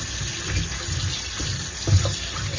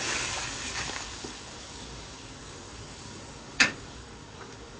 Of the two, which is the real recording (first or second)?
first